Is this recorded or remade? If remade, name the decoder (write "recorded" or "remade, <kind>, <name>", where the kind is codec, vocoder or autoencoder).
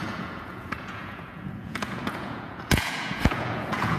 remade, vocoder, Vocos